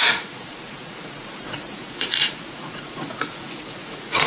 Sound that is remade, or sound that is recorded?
remade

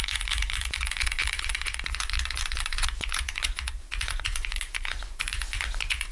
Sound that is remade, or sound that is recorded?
remade